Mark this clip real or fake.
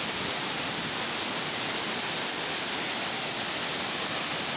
real